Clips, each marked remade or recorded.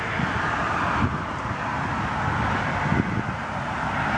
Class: recorded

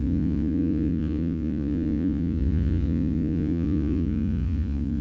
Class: remade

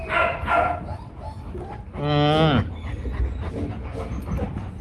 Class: recorded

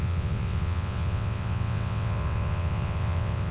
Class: remade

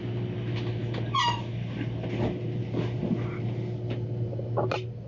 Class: recorded